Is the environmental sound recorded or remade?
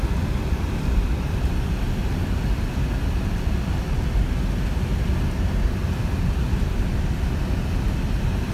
recorded